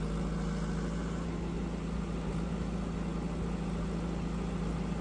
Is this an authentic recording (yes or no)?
yes